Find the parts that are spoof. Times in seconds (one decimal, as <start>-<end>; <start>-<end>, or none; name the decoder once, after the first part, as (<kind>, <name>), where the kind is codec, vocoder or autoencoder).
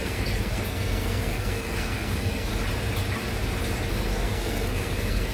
0.0-2.5 (codec, SNAC); 3.9-5.3